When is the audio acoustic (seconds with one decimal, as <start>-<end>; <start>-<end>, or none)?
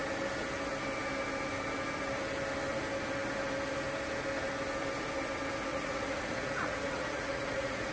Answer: 0.0-5.7